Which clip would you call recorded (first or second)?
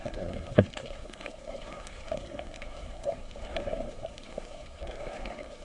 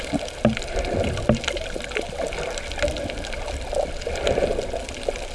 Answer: second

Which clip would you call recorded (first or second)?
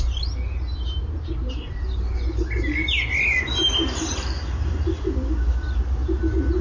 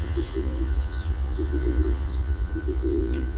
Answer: first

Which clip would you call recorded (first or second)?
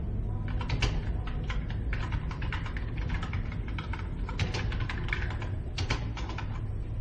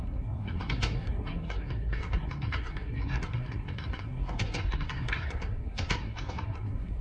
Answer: first